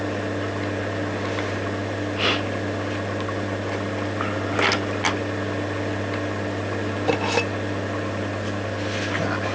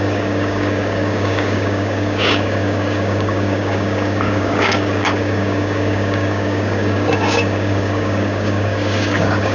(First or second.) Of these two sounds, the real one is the first